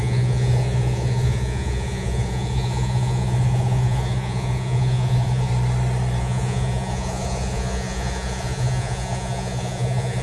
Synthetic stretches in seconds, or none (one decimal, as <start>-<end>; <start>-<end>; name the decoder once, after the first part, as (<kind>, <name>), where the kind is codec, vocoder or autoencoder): 0.0-5.5 (vocoder, Vocos); 6.2-10.2